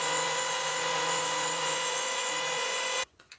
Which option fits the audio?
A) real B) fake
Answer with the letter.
B